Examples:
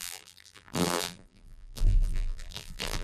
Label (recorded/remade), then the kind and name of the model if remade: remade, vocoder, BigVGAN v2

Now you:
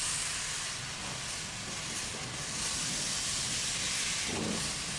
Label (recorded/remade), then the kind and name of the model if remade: remade, vocoder, BigVGAN v2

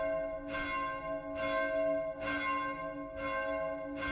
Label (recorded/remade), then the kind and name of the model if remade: recorded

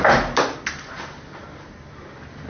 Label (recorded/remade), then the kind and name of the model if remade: recorded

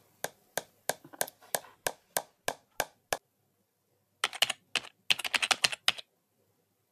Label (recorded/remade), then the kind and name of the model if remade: recorded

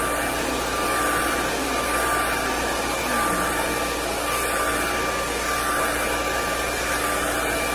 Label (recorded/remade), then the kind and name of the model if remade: recorded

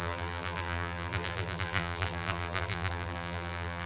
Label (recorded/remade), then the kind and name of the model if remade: remade, vocoder, BigVGAN v2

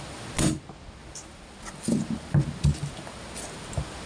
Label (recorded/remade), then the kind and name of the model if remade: recorded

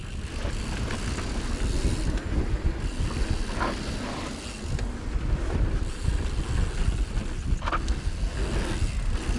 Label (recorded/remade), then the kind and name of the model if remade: recorded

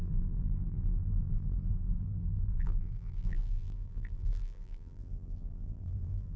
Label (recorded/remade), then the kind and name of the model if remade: remade, vocoder, BigVGAN v2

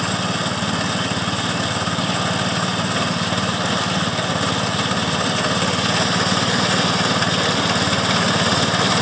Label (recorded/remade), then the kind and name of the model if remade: recorded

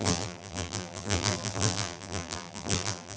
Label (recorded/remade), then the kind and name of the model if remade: remade, vocoder, BigVGAN v2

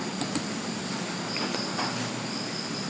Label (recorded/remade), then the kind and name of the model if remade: recorded